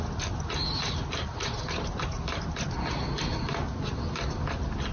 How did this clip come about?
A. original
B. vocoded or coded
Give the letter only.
A